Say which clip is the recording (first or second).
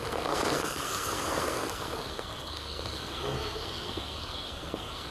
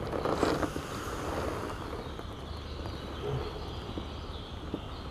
second